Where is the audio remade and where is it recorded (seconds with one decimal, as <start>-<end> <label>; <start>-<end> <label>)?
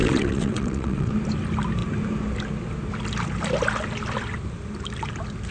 0.0-1.1 remade; 1.1-5.5 recorded